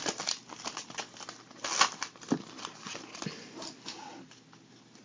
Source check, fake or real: real